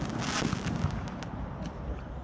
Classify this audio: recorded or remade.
recorded